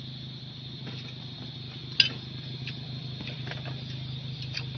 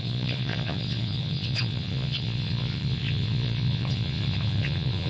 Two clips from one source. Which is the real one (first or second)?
first